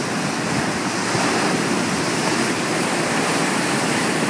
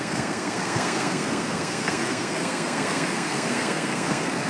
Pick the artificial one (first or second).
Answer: second